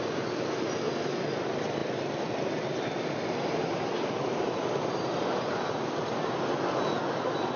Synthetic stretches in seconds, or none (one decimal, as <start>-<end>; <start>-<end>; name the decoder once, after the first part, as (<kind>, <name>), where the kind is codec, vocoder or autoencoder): 1.8-4.8 (vocoder, BigVGAN v2)